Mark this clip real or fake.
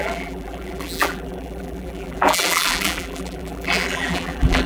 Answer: fake